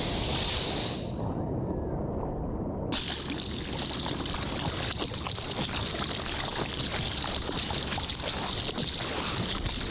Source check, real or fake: real